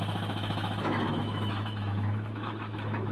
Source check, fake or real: fake